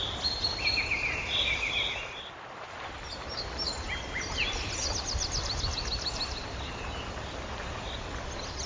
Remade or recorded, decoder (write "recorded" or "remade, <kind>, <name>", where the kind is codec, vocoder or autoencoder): recorded